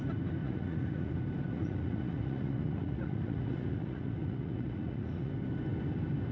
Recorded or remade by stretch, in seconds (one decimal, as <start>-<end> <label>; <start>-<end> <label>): 0.0-0.4 recorded; 0.4-1.1 remade; 1.1-1.5 recorded; 1.5-5.3 remade; 5.3-6.3 recorded